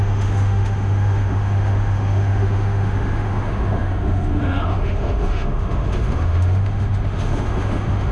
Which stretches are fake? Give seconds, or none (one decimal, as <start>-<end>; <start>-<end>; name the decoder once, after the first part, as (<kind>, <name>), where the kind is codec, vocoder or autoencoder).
0.0-8.1 (autoencoder, DAC-VAE)